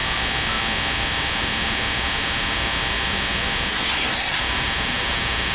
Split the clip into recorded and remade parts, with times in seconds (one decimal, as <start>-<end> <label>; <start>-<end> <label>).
0.0-3.7 recorded; 3.7-4.4 remade; 4.4-5.5 recorded